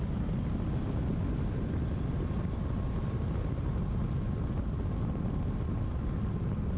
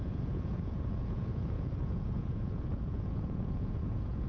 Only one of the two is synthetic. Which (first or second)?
second